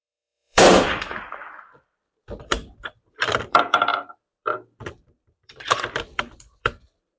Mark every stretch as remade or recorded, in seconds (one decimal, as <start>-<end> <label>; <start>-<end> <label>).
0.0-3.9 remade; 3.9-4.4 recorded; 4.4-7.2 remade